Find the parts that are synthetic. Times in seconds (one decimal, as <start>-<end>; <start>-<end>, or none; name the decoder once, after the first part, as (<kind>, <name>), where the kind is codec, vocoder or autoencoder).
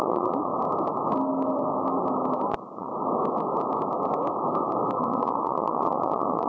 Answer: 0.0-0.5 (vocoder, Vocos); 2.5-2.9; 5.0-6.5